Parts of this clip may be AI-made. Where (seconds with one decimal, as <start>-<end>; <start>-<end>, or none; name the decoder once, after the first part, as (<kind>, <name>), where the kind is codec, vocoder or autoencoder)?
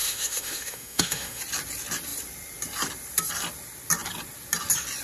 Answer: 0.0-1.4 (autoencoder, DAC-VAE)